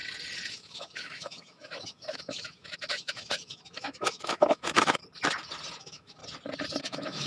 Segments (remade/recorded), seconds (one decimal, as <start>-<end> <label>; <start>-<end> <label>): 0.0-0.5 recorded; 0.5-5.0 remade; 5.0-5.8 recorded; 5.8-6.2 remade; 6.2-6.8 recorded; 6.8-7.3 remade